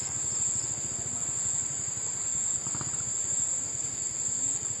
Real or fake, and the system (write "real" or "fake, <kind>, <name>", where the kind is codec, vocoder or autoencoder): real